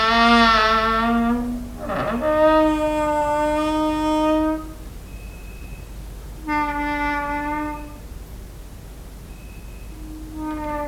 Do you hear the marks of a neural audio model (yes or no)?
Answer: no